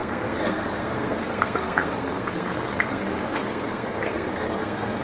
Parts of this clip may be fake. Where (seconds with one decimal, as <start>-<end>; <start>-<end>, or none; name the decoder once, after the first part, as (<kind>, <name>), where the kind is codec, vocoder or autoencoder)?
0.0-5.0 (codec, SNAC)